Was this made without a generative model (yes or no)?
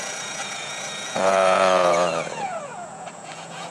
no